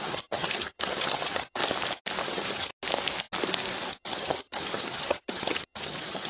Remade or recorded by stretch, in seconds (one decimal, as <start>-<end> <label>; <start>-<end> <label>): 0.0-1.6 remade; 1.6-2.2 recorded; 2.2-2.7 remade; 2.7-3.9 recorded; 3.9-6.3 remade